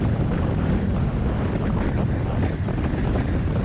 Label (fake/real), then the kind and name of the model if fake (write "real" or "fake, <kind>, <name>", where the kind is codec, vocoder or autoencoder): real